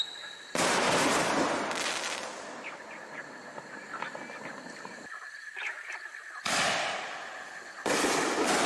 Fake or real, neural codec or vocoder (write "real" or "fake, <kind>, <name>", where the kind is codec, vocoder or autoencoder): real